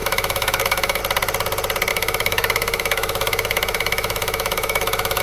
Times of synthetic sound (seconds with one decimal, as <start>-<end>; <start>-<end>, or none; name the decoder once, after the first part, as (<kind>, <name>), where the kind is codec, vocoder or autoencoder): 0.0-1.0 (autoencoder, DAC-VAE); 1.9-5.2